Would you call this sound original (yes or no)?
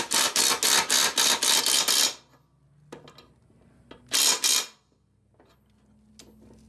yes